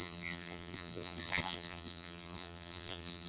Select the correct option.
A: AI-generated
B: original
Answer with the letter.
A